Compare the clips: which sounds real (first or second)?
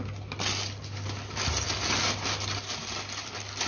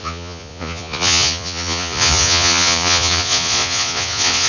first